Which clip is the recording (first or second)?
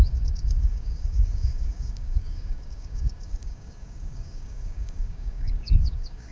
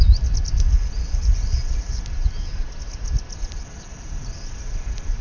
second